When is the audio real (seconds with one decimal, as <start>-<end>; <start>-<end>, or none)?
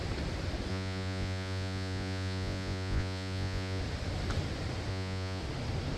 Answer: 0.0-0.7; 3.8-4.9; 5.4-6.0